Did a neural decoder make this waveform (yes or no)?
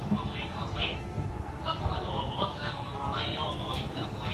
yes